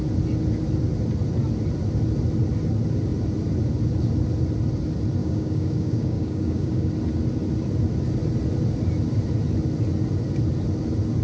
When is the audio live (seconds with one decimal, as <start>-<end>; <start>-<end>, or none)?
0.0-5.2; 6.9-11.2